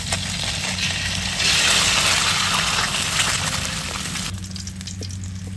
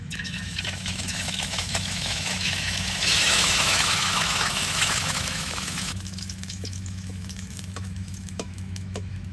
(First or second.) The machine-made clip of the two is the second